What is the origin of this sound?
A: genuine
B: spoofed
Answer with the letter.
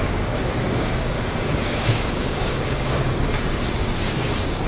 B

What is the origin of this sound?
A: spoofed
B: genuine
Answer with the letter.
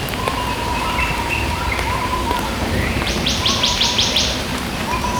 A